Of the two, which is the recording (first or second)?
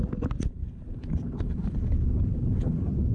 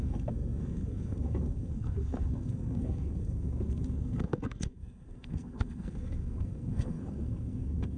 first